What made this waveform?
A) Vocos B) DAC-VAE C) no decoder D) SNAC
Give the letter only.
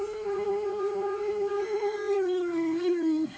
D